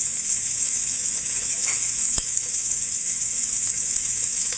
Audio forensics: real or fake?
fake